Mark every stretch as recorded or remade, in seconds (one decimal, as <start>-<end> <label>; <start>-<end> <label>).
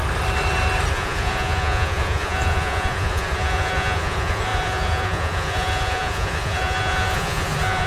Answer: 0.0-0.9 recorded; 0.9-7.9 remade